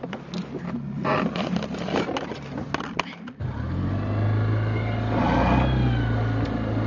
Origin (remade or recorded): recorded